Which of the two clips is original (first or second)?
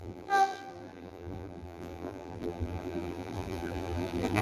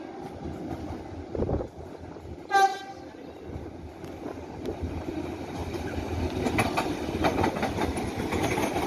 second